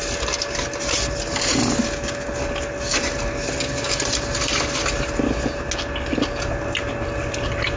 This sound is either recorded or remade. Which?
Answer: recorded